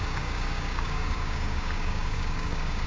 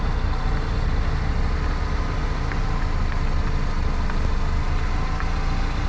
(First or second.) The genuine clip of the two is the second